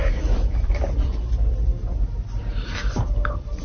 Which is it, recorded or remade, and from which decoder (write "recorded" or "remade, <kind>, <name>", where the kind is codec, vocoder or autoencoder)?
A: remade, vocoder, BigVGAN v2